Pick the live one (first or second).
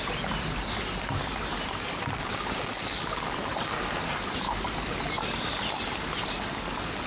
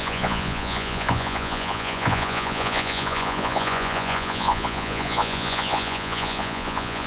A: first